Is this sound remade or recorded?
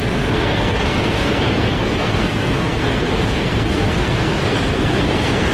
remade